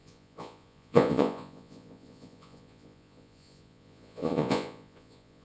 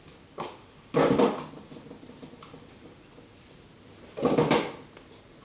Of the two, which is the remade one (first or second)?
first